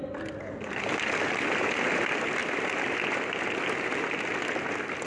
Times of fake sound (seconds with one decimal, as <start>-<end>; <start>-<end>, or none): none